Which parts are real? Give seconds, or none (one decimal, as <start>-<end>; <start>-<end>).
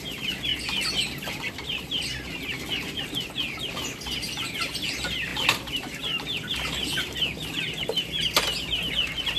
0.0-9.4